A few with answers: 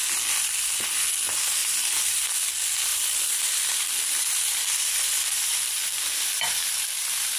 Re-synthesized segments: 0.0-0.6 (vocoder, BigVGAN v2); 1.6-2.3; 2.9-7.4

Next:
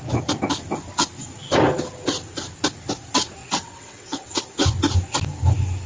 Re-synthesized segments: 3.4-4.4 (vocoder, WaveNeXt)

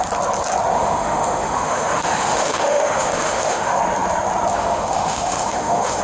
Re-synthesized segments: 0.7-3.8 (autoencoder, DAC-VAE); 4.5-6.0

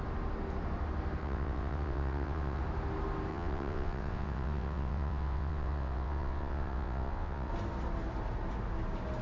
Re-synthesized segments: 1.2-2.6 (vocoder, WaveNeXt); 3.3-7.5

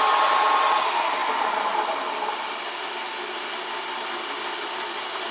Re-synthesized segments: none